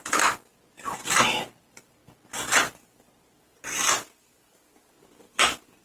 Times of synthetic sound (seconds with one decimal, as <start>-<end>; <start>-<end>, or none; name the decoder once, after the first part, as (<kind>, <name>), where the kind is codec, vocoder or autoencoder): 0.0-0.5 (vocoder, BigVGAN v2); 1.6-2.0; 5.2-5.8